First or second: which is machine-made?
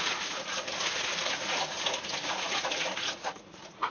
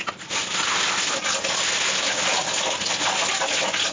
first